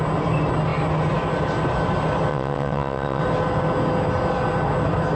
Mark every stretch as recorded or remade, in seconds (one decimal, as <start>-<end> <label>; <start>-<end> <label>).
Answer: 0.0-2.3 recorded; 2.3-3.2 remade; 3.2-5.2 recorded